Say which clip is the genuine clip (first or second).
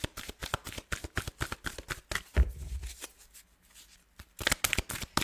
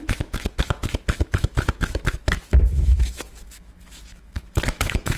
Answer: first